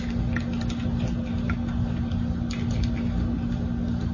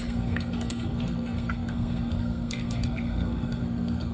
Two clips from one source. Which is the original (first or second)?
first